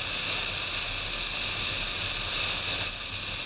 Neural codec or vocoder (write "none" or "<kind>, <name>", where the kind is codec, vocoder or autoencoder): none